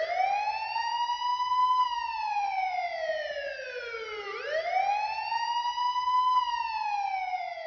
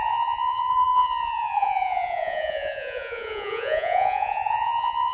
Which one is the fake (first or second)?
second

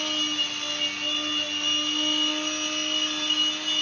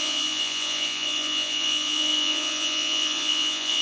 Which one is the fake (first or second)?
second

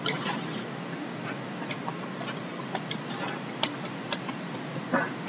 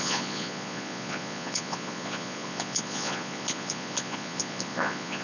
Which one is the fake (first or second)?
second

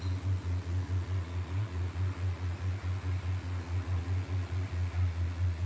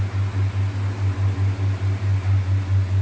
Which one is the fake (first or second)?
first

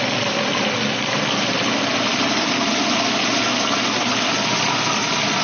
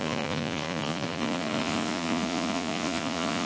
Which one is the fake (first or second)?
second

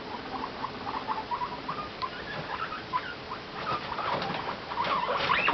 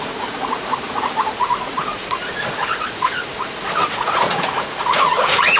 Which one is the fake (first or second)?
second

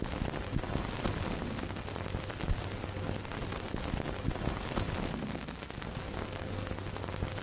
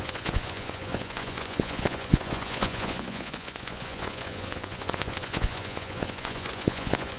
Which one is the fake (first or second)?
second